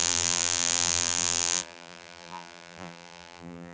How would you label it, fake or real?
fake